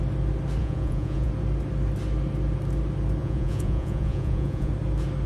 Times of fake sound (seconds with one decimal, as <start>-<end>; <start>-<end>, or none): 0.6-1.3; 3.2-4.7